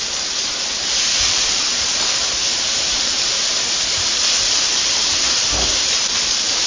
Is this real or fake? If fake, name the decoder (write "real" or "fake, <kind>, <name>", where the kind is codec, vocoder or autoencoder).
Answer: fake, vocoder, BigVGAN v2